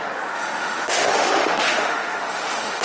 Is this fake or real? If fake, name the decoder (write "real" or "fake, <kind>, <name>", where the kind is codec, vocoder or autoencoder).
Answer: fake, autoencoder, DAC-VAE